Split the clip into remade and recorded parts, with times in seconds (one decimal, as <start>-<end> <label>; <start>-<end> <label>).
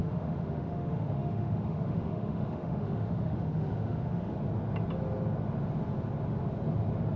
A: 0.0-4.3 remade; 4.3-7.2 recorded